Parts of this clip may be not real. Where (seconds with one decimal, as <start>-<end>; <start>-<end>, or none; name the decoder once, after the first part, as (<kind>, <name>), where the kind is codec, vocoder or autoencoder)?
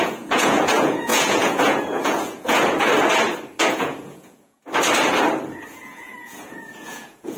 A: 0.0-2.9 (vocoder, Vocos); 3.6-4.6; 5.7-7.4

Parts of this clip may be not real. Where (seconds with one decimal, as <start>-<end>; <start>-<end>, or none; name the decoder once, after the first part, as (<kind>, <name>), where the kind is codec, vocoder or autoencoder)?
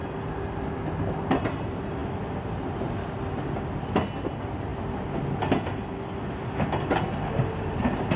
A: none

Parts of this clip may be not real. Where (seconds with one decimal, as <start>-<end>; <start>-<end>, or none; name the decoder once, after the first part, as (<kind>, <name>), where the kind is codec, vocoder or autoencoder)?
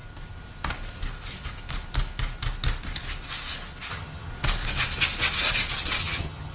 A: 3.9-4.3 (vocoder, HiFi-GAN); 6.0-6.5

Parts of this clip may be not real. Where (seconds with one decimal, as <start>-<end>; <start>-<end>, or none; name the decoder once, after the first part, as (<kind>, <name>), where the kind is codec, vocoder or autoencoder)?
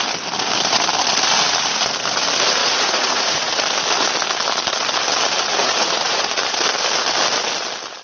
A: 2.6-3.5 (vocoder, Vocos); 5.6-6.2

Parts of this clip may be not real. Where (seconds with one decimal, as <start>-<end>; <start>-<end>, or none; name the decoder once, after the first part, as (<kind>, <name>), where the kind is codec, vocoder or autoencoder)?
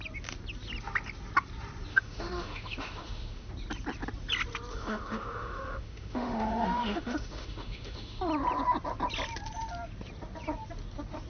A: 1.9-3.5 (autoencoder, DAC-VAE); 4.7-8.2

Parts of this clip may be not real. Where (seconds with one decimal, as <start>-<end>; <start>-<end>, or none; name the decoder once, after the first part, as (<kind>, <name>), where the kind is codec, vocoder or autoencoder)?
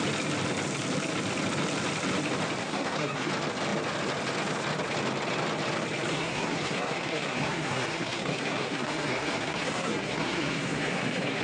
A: 2.6-3.3 (codec, SNAC); 6.1-11.4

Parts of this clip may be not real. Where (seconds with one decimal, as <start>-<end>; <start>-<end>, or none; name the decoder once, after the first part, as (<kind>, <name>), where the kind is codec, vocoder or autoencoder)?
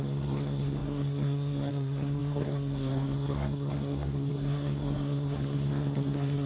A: 0.0-6.5 (codec, SNAC)